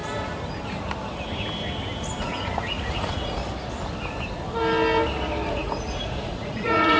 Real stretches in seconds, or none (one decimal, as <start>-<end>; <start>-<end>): 0.0-2.2; 3.4-5.5